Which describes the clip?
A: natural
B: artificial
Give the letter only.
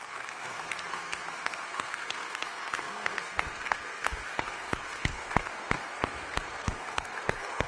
B